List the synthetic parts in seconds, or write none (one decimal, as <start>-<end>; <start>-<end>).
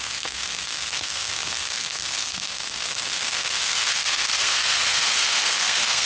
0.0-6.1